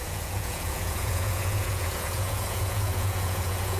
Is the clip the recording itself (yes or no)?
no